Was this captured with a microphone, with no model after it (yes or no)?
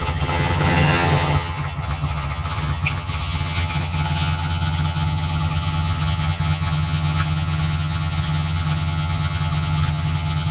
no